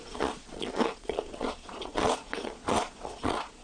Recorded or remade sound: remade